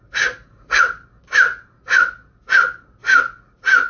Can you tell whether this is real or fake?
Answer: real